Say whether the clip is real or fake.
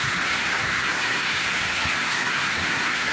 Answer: fake